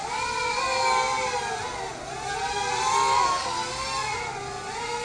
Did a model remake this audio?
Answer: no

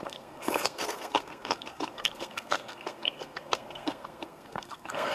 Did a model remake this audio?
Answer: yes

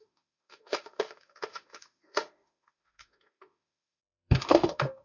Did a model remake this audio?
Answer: yes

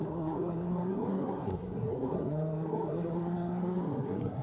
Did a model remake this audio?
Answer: yes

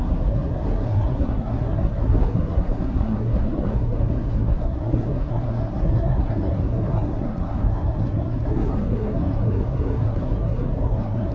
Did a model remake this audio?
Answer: yes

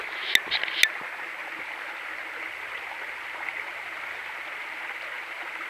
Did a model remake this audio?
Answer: no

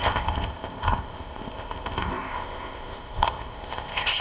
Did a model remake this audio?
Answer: yes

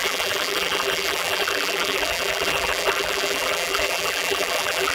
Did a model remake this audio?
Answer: yes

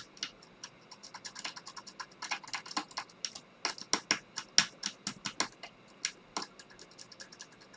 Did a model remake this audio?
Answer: no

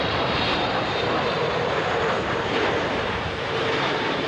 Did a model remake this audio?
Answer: yes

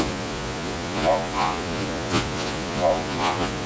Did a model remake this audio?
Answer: yes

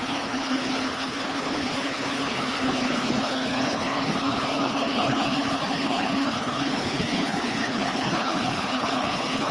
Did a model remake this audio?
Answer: yes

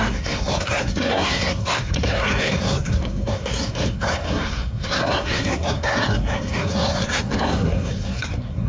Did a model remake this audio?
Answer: yes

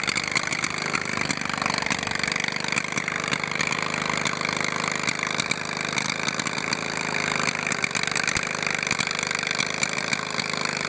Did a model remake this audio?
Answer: no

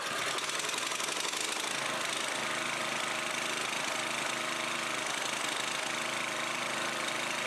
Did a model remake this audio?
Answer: no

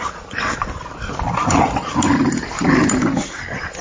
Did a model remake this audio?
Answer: no